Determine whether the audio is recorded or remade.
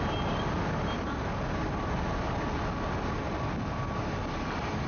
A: recorded